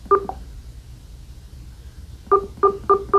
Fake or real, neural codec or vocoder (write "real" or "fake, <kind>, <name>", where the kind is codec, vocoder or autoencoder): real